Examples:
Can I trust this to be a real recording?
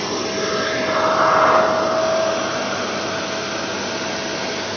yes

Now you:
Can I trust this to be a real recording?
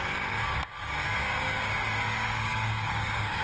no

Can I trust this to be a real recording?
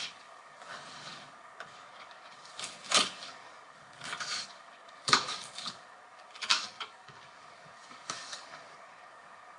no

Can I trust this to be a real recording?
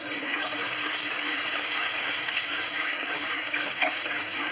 no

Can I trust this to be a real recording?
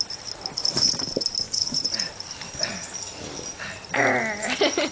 yes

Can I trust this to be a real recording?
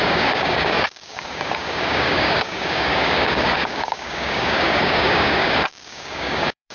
no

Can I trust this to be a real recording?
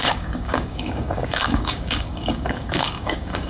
no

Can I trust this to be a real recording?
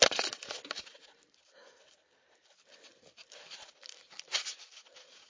yes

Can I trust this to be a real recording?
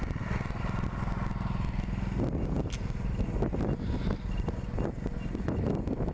yes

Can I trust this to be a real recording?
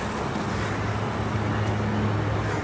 yes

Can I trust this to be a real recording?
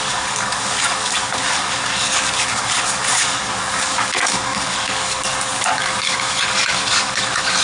no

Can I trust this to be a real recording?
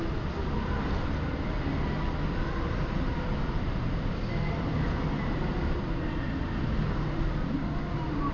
yes